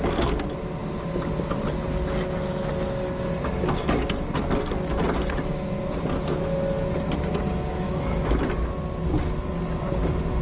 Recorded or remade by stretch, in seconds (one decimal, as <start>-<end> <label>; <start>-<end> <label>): 0.0-7.7 recorded; 7.7-8.4 remade; 8.4-10.4 recorded